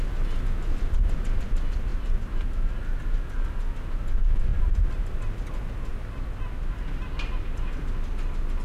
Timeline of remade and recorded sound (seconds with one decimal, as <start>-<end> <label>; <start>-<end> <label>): 0.0-8.6 recorded